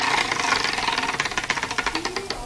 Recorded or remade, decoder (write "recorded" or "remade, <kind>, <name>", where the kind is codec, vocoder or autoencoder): recorded